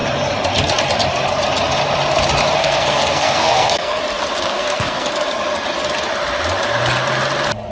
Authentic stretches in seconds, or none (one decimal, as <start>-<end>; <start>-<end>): 0.0-2.6; 4.0-4.5; 5.1-7.7